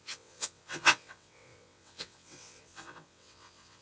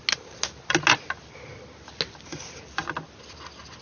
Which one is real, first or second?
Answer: second